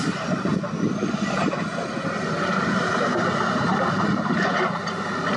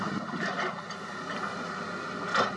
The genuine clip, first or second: second